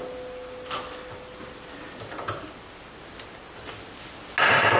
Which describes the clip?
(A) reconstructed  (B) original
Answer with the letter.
B